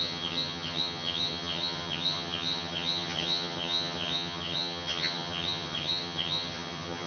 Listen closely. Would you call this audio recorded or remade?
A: remade